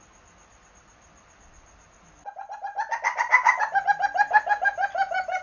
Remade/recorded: recorded